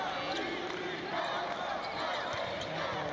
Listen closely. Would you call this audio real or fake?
real